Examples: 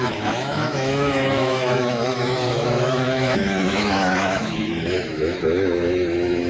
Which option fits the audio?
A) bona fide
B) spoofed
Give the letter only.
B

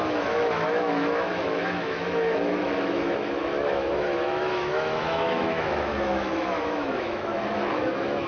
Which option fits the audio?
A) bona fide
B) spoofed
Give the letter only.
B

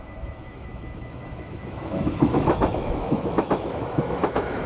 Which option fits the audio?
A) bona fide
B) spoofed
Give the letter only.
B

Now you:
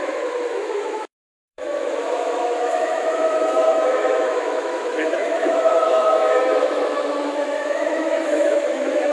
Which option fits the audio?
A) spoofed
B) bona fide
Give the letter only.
A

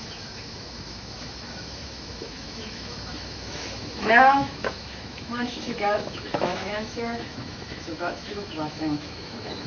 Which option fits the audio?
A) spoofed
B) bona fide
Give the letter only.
A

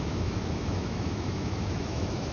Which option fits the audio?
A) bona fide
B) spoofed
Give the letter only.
B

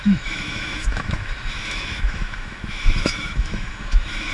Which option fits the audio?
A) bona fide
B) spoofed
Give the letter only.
B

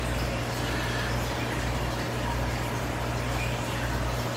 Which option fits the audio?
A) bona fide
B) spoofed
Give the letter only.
A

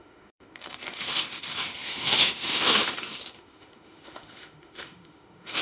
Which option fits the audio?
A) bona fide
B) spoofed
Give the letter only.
B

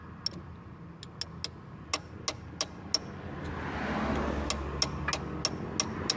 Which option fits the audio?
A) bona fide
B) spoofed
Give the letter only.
A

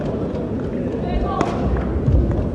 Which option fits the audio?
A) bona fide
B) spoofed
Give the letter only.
A